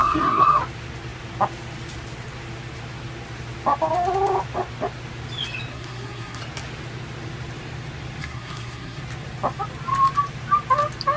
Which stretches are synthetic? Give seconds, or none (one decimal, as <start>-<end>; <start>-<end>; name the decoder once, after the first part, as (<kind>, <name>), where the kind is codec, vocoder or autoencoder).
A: 0.0-0.6 (codec, SNAC); 5.7-6.4; 8.2-9.0